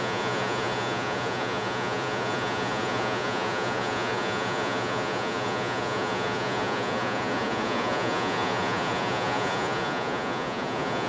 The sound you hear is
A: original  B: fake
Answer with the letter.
B